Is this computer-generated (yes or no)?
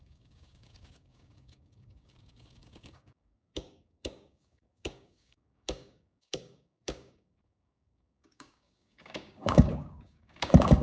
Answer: yes